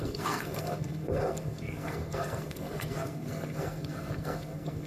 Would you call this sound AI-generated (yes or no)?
yes